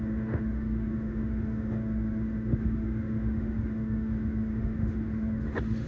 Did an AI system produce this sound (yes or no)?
yes